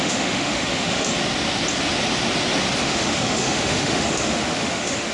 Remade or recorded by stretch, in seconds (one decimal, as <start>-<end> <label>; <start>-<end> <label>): 0.0-1.1 remade; 1.1-2.8 recorded; 2.8-5.1 remade